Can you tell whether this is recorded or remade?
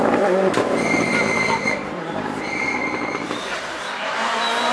remade